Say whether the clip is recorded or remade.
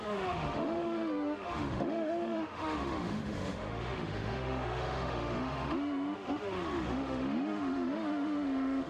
remade